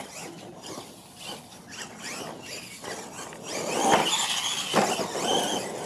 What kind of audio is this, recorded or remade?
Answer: recorded